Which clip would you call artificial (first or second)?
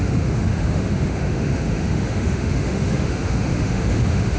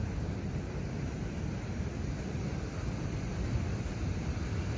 first